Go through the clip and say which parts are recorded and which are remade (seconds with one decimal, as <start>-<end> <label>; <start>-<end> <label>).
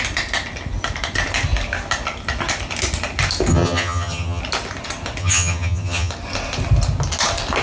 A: 0.0-3.5 recorded; 3.5-4.4 remade; 4.4-5.2 recorded; 5.2-6.1 remade; 6.1-7.6 recorded